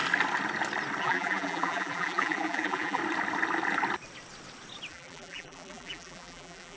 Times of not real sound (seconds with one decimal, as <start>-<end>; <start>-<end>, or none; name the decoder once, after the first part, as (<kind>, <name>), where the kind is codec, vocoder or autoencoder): 1.0-3.0 (vocoder, BigVGAN v2); 4.9-6.8